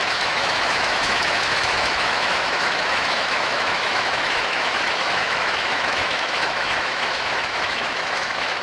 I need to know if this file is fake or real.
fake